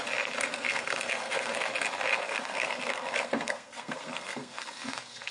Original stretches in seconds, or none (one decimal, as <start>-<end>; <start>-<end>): 0.0-0.5; 1.7-2.1